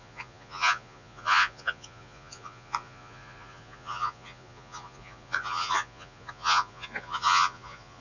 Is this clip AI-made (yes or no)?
yes